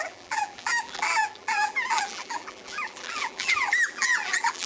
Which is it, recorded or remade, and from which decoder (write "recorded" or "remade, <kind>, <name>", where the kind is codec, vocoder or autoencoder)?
remade, vocoder, BigVGAN v2